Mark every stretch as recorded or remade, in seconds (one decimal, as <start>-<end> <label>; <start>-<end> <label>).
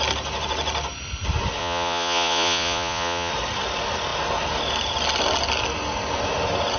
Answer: 0.0-1.6 recorded; 1.6-3.3 remade; 3.3-6.8 recorded